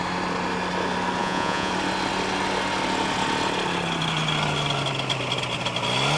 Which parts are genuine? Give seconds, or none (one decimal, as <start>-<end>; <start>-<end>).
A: 0.0-1.2; 1.7-6.2